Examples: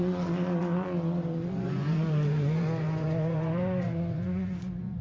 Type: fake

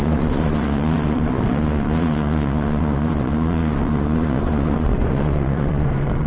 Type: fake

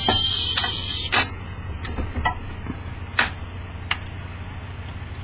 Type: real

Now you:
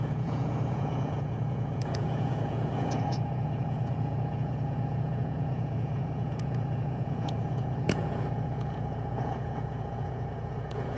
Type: fake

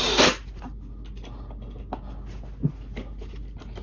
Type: real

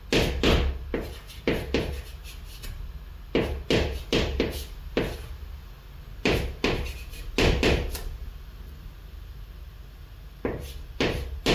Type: real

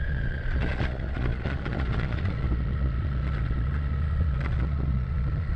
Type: fake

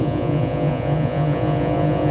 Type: fake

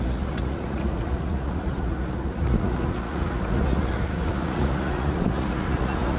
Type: fake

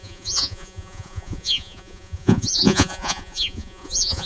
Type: fake